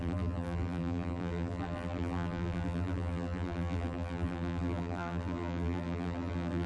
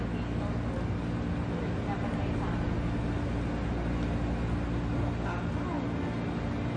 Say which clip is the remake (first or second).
first